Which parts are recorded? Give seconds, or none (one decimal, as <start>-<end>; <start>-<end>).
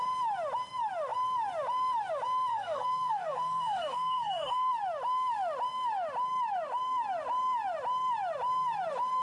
0.0-2.5; 4.7-9.2